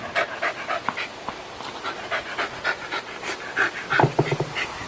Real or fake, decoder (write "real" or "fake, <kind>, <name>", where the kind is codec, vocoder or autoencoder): real